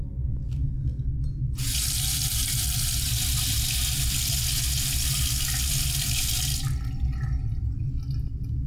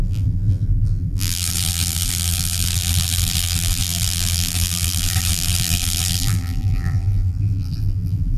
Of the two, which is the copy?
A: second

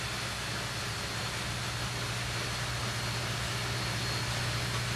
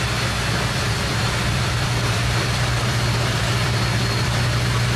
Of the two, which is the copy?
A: second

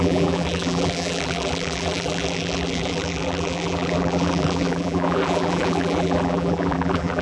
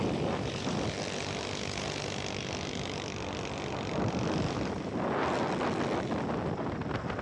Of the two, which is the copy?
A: first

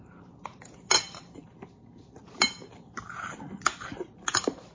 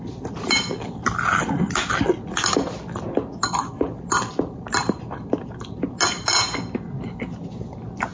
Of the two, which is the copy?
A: first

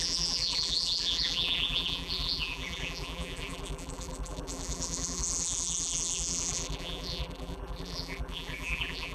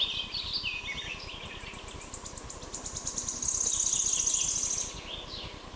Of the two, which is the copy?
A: first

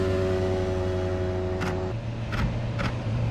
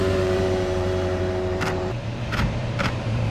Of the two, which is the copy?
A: second